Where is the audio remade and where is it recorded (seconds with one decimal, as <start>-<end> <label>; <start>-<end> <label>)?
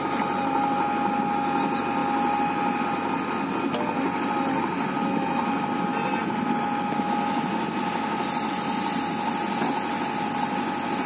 0.0-11.1 recorded